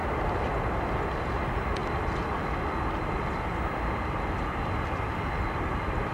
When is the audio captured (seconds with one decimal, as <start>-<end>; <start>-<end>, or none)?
0.0-6.1